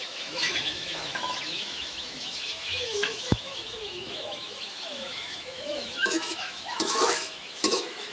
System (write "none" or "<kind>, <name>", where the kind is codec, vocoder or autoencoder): autoencoder, DAC-VAE